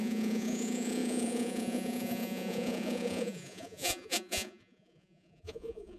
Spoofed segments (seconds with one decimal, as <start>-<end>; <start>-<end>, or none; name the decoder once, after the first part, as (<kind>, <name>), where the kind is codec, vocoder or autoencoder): 0.0-6.0 (vocoder, Vocos)